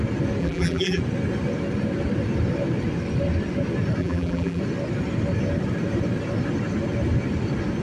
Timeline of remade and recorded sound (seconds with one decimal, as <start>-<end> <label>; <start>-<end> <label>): 0.0-0.4 recorded; 0.4-1.0 remade; 1.0-4.0 recorded; 4.0-4.6 remade; 4.6-7.8 recorded